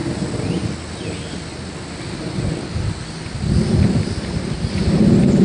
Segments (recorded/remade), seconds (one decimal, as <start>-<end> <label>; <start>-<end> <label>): 0.0-5.4 recorded

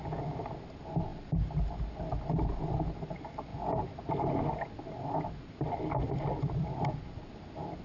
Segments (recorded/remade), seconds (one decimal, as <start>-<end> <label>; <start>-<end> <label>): 0.0-7.8 recorded

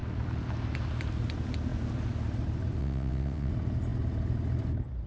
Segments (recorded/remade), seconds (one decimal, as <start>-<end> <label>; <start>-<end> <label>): 0.0-2.8 recorded; 2.8-3.5 remade; 3.5-5.1 recorded

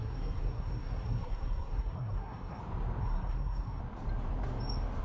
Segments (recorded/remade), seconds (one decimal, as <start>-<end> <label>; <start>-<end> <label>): 0.0-2.6 remade; 2.6-3.0 recorded; 3.0-3.8 remade; 3.8-5.0 recorded

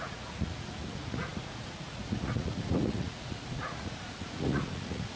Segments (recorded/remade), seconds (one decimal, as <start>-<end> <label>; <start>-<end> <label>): 0.0-5.2 remade

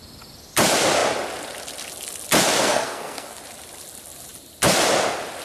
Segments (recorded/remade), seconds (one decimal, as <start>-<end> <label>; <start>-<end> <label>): 0.0-2.6 recorded; 2.6-3.4 remade; 3.4-5.4 recorded

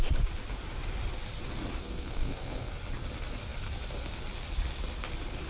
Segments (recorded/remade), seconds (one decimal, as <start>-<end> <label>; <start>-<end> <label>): 0.0-1.8 recorded; 1.8-2.7 remade; 2.7-5.5 recorded

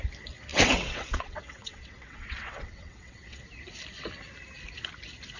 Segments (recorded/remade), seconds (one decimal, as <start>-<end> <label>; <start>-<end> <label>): 0.0-0.5 recorded; 0.5-3.4 remade; 3.4-5.4 recorded